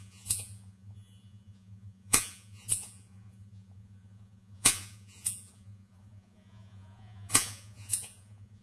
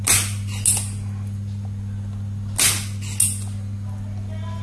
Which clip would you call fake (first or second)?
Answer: first